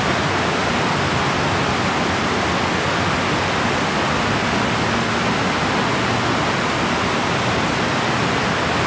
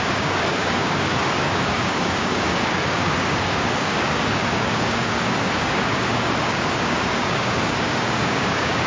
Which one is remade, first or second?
second